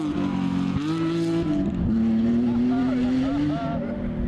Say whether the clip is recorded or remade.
recorded